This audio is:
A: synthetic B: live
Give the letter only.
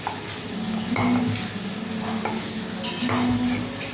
B